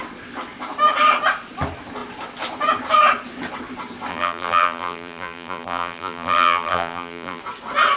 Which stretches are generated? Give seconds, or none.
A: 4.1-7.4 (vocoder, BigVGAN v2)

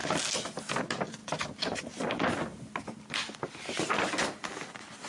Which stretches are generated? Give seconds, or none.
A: 1.2-2.7 (vocoder, BigVGAN v2); 4.4-5.1

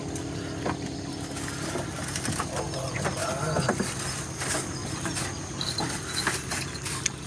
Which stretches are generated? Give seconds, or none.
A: 4.8-6.0 (vocoder, BigVGAN v2)

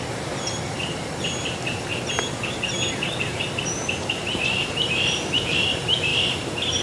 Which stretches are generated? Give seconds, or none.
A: 0.0-1.9 (vocoder, BigVGAN v2); 2.5-6.1

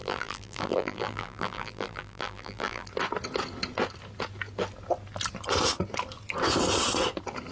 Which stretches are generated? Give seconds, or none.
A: 0.0-2.9 (vocoder, BigVGAN v2)

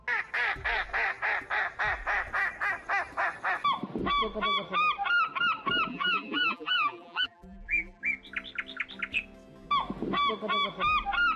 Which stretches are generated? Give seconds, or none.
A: 5.9-8.0 (vocoder, BigVGAN v2)

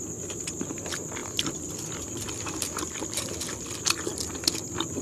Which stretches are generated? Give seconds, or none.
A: 1.2-4.2 (vocoder, BigVGAN v2)

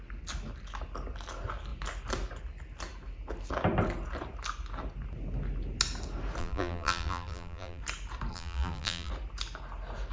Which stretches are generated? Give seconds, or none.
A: 6.4-7.8 (vocoder, BigVGAN v2); 8.3-9.1